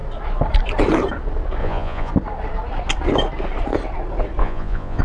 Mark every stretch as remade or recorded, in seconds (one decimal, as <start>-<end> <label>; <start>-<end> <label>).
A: 0.0-1.6 recorded; 1.6-2.1 remade; 2.1-4.4 recorded; 4.4-5.0 remade